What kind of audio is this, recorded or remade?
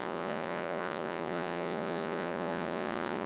remade